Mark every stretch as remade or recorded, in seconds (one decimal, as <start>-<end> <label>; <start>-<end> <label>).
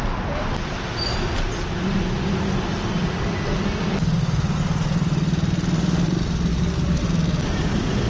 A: 0.0-6.5 recorded; 6.5-7.0 remade; 7.0-8.1 recorded